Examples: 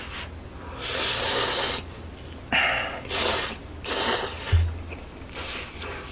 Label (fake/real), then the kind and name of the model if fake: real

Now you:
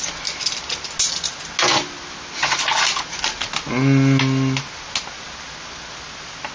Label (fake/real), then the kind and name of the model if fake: real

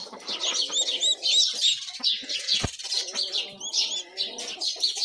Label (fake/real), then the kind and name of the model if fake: real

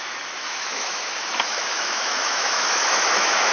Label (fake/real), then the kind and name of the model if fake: fake, autoencoder, DAC-VAE